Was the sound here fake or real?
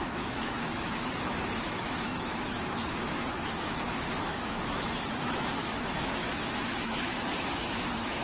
fake